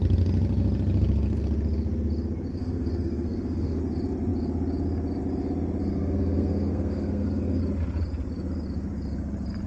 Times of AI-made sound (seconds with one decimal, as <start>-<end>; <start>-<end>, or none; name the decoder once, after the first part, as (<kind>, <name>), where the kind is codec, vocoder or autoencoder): 2.5-3.8 (codec, SNAC); 5.9-7.6